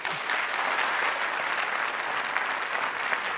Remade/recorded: recorded